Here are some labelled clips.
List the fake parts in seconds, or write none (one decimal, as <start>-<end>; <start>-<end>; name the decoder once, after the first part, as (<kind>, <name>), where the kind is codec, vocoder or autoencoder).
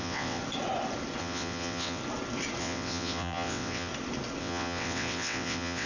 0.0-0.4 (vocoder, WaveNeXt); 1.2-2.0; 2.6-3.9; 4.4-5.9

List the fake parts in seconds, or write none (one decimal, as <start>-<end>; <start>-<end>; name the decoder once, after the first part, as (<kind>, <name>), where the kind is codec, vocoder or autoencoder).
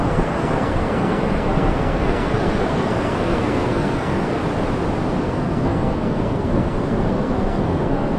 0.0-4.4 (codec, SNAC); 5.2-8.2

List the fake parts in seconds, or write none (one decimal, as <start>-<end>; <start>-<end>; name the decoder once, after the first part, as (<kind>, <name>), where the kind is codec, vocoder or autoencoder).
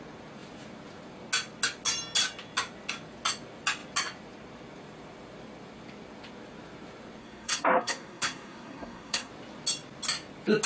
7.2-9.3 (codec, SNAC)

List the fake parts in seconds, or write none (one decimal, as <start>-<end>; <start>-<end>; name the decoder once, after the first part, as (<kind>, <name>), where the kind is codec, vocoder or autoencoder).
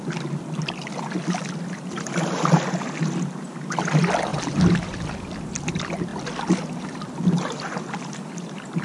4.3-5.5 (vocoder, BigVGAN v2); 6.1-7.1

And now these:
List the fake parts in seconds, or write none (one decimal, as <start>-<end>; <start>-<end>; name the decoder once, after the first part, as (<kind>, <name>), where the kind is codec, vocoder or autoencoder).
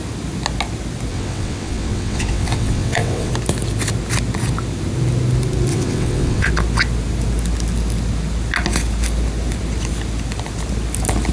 1.1-3.3 (vocoder, WaveNeXt); 5.7-6.5